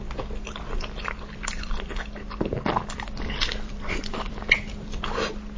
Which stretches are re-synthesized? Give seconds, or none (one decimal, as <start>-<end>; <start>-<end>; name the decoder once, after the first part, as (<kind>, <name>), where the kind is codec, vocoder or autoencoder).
1.0-4.4 (vocoder, BigVGAN v2)